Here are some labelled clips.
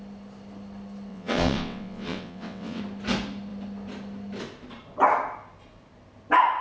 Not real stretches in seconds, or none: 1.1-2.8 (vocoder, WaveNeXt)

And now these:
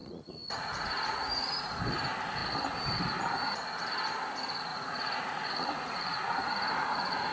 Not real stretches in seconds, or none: 0.0-1.8 (vocoder, Vocos); 4.7-7.3

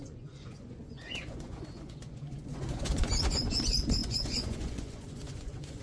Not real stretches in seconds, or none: 0.0-5.8 (vocoder, Vocos)

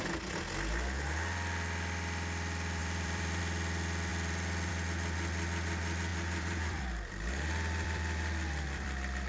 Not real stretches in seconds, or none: 2.8-3.4 (vocoder, BigVGAN v2); 4.1-4.7; 6.1-9.3

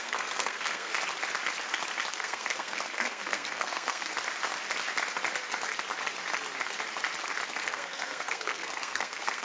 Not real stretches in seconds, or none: 0.0-0.9 (codec, SNAC); 2.1-4.1; 7.6-9.4

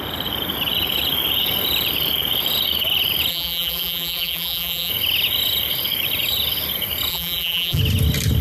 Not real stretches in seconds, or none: 3.3-4.9 (vocoder, BigVGAN v2); 7.1-7.8

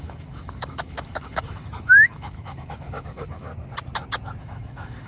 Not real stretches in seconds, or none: 0.0-3.5 (autoencoder, DAC-VAE); 4.4-5.1